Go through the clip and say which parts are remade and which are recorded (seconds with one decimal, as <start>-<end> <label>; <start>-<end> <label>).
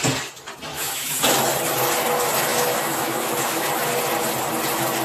0.0-0.7 recorded; 0.7-1.2 remade; 1.2-2.5 recorded; 2.5-3.7 remade; 3.7-5.0 recorded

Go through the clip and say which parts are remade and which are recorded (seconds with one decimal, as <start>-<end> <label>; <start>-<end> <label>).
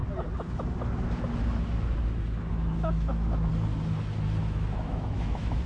0.0-2.5 recorded; 2.5-3.5 remade; 3.5-4.4 recorded; 4.4-5.7 remade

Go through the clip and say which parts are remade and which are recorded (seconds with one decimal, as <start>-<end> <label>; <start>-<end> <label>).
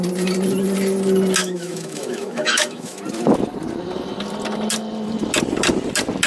0.0-1.4 recorded; 1.4-3.0 remade; 3.0-6.3 recorded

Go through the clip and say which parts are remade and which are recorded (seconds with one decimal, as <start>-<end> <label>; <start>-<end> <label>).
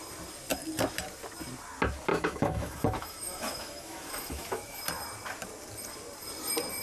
0.0-2.1 recorded; 2.1-4.8 remade; 4.8-6.8 recorded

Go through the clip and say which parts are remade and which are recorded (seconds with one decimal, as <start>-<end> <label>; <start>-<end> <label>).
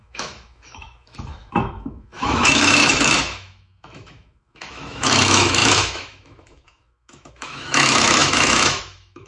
0.0-9.3 remade